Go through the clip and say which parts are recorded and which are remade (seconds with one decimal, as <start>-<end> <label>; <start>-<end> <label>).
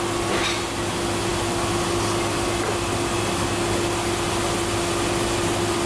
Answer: 0.0-5.9 recorded